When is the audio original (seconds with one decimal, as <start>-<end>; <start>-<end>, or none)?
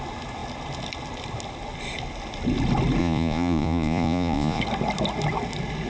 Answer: 0.0-3.0; 4.6-5.9